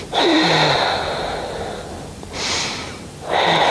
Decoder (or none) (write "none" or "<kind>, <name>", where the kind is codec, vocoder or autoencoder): none